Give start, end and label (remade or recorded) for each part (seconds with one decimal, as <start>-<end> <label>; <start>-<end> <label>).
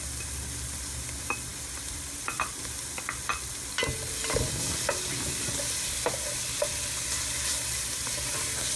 0.0-1.5 recorded; 1.5-2.5 remade; 2.5-8.8 recorded